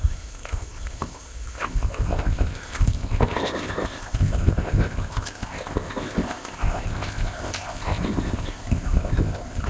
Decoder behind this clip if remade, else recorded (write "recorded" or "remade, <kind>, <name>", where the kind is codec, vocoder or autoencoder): remade, codec, ZipCodec